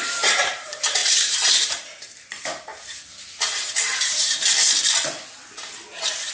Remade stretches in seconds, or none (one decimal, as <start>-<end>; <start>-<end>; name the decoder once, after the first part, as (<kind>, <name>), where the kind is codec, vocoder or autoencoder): 0.0-2.7 (vocoder, BigVGAN v2); 4.0-4.5